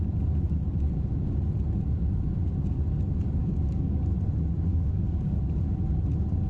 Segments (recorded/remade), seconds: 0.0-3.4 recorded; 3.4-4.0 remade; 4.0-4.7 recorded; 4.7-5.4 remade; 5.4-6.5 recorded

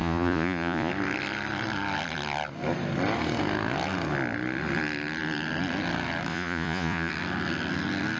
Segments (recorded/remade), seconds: 0.0-0.9 remade; 0.9-6.3 recorded; 6.3-7.1 remade; 7.1-8.2 recorded

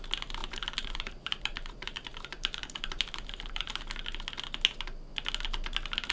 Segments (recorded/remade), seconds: 0.0-0.4 recorded; 0.4-3.8 remade; 3.8-6.1 recorded

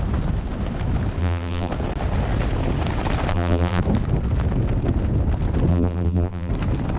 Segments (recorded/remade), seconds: 0.0-1.2 recorded; 1.2-1.7 remade; 1.7-3.3 recorded; 3.3-3.8 remade; 3.8-5.7 recorded; 5.7-6.5 remade; 6.5-7.0 recorded